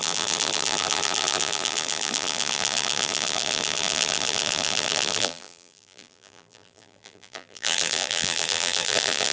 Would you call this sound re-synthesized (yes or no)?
yes